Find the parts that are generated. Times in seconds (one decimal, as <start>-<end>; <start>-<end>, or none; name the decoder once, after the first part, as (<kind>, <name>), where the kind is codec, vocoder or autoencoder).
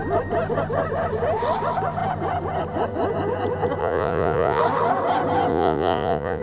3.8-4.6 (vocoder, Vocos); 5.5-6.4